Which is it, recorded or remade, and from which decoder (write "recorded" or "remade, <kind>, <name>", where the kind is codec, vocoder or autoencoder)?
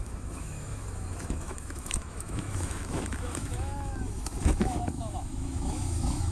remade, autoencoder, DAC-VAE